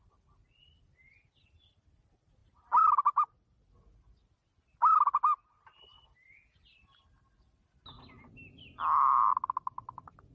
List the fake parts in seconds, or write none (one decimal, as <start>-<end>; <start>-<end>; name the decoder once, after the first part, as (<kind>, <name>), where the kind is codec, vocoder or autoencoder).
none